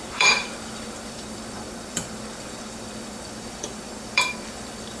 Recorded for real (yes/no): no